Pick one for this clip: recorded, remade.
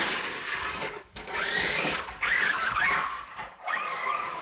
remade